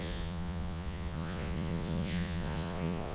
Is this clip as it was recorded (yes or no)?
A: no